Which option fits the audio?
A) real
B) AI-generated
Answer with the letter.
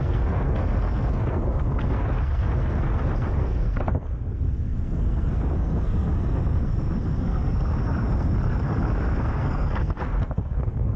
B